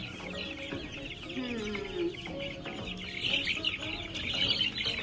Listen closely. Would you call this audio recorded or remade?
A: recorded